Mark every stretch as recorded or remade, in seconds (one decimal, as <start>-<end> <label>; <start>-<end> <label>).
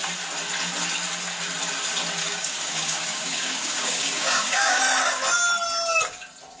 0.0-2.2 recorded; 2.2-4.8 remade; 4.8-6.6 recorded